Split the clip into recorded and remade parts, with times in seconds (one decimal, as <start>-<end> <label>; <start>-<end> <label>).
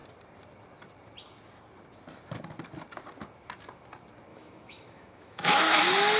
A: 0.0-4.3 recorded; 4.3-5.8 remade; 5.8-6.2 recorded